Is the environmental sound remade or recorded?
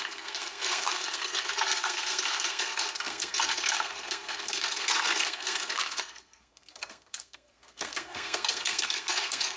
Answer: remade